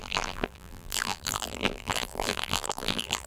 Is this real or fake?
fake